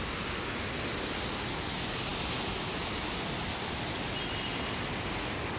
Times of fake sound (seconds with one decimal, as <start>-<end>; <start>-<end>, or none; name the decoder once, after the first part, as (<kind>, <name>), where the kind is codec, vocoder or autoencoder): none